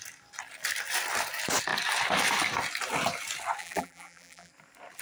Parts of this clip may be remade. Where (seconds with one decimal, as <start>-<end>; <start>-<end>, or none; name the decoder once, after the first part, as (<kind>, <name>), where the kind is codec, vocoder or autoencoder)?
3.6-4.5 (vocoder, BigVGAN v2)